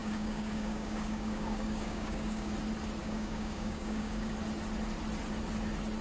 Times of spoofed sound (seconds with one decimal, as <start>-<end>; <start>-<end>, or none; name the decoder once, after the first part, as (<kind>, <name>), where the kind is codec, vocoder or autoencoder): 0.0-2.5 (codec, DAC); 3.0-4.3